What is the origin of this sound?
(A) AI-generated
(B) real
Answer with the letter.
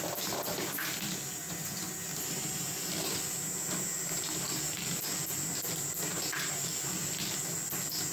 B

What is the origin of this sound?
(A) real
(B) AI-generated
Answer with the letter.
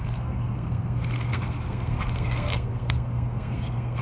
B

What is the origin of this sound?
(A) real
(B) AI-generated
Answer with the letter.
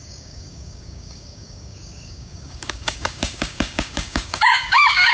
B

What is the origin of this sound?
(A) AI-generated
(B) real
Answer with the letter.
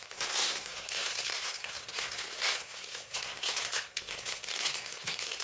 A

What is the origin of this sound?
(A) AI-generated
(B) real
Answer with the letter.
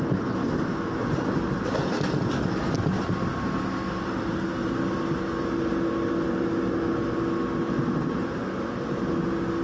B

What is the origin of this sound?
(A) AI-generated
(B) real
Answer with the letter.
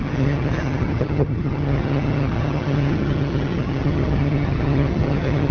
A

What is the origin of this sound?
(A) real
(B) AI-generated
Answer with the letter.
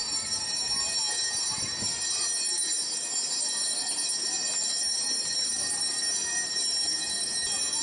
A